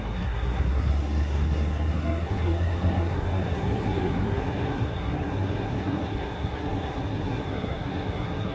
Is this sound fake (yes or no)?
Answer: yes